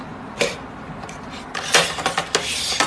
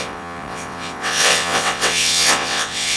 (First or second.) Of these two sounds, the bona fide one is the first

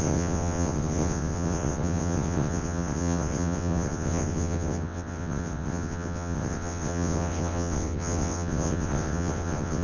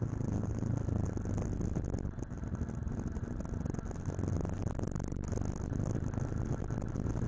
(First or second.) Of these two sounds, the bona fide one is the second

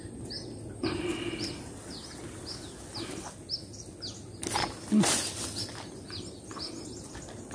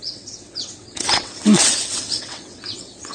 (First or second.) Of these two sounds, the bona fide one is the first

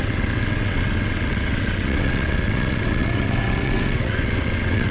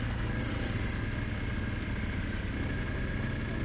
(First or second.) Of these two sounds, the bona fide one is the second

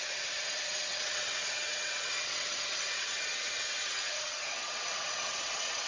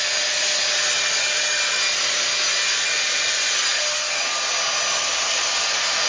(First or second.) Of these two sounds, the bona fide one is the second